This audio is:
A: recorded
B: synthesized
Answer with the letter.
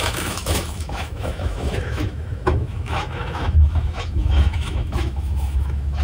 B